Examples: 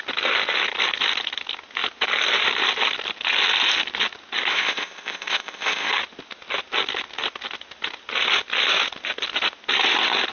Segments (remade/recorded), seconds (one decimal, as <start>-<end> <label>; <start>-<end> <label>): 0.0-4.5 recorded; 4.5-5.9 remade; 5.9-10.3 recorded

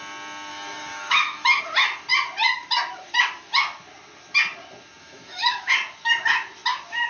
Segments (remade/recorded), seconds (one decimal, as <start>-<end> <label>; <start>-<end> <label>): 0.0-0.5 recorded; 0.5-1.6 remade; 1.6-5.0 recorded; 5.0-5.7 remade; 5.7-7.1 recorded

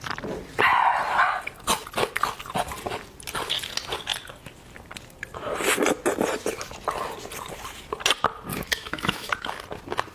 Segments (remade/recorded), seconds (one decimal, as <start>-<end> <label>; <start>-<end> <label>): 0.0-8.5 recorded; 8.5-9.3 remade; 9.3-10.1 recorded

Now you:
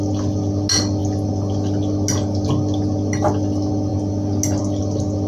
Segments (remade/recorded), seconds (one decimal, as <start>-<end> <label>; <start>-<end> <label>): 0.0-5.3 recorded

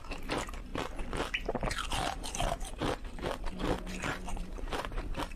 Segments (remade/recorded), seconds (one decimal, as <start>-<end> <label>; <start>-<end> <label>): 0.0-4.3 recorded; 4.3-5.0 remade; 5.0-5.4 recorded

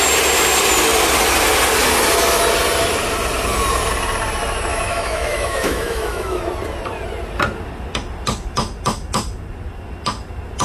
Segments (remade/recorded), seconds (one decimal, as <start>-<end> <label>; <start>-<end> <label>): 0.0-4.7 recorded; 4.7-6.4 remade; 6.4-10.6 recorded

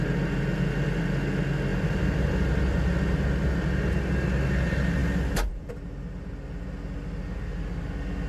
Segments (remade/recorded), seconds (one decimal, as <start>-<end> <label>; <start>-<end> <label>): 0.0-1.7 recorded; 1.7-2.5 remade; 2.5-5.0 recorded; 5.0-5.7 remade; 5.7-8.3 recorded

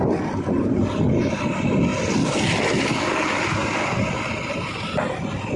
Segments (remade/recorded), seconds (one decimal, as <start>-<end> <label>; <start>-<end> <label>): 0.0-5.6 recorded